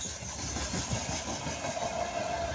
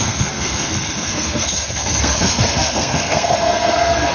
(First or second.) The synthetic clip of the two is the second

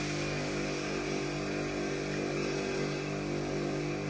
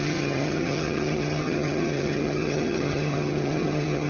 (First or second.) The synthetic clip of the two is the second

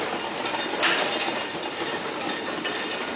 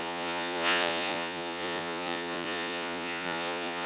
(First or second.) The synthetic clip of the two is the second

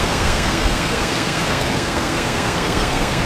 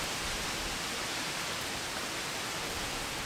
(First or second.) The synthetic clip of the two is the first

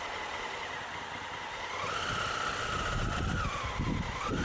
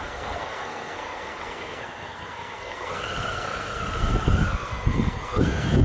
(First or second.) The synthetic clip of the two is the second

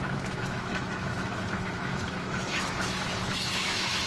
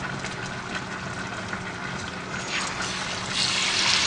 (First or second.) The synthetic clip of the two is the first